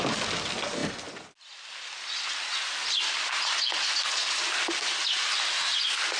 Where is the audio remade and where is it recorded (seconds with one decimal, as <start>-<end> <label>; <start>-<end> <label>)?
0.0-6.2 recorded